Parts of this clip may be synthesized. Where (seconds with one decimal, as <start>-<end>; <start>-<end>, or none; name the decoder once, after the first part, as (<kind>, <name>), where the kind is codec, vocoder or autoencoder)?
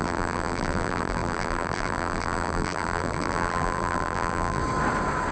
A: 0.0-4.6 (vocoder, BigVGAN v2)